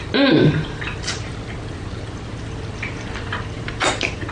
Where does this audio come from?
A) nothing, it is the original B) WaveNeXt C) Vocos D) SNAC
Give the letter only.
A